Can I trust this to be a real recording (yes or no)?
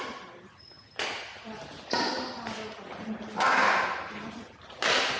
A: yes